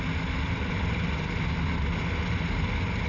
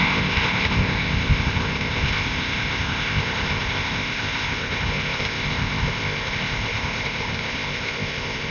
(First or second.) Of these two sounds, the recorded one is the first